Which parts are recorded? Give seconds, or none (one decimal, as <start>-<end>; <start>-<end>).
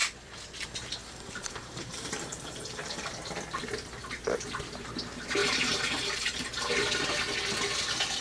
0.0-1.0; 3.1-5.4; 6.7-8.2